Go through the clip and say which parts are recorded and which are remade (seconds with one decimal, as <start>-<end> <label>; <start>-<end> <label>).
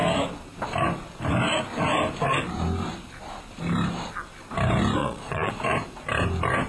0.0-5.0 recorded; 5.0-5.5 remade; 5.5-6.7 recorded